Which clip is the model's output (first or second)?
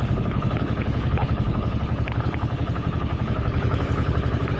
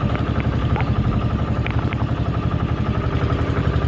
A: first